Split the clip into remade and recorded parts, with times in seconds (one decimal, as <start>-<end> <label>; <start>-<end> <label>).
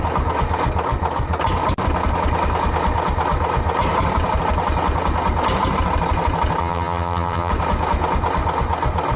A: 0.0-6.6 recorded; 6.6-7.5 remade; 7.5-9.2 recorded